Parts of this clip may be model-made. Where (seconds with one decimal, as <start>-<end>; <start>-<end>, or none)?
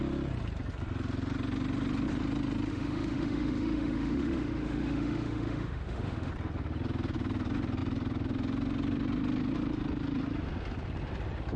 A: 2.7-6.3